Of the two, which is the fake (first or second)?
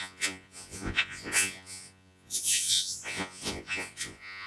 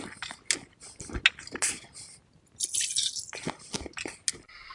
first